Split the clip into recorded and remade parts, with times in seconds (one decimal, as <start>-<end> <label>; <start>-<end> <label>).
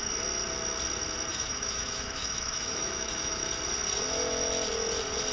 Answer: 0.0-1.3 recorded; 1.3-3.5 remade; 3.5-5.3 recorded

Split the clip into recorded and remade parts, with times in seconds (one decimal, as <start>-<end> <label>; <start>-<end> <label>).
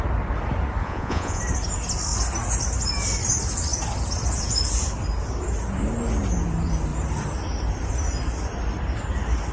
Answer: 0.0-0.8 recorded; 0.8-1.4 remade; 1.4-9.5 recorded